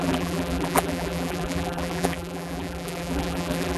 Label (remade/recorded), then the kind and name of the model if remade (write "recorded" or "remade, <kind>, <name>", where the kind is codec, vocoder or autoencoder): remade, vocoder, BigVGAN v2